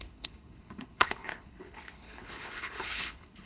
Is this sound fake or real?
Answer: fake